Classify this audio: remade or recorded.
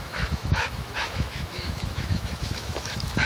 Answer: remade